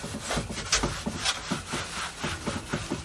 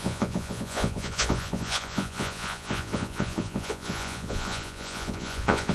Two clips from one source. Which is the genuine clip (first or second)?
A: first